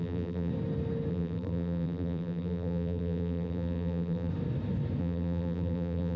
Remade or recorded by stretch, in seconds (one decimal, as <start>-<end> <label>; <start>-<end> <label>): 0.0-0.5 remade; 0.5-1.1 recorded; 1.1-4.3 remade; 4.3-5.0 recorded; 5.0-6.2 remade